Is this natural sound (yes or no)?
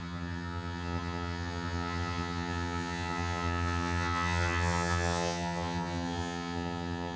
no